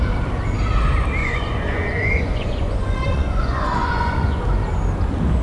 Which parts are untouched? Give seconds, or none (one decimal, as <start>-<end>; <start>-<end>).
0.0-1.2; 4.4-5.4